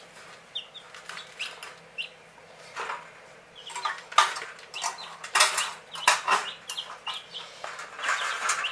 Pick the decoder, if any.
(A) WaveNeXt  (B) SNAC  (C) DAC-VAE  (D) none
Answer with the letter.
D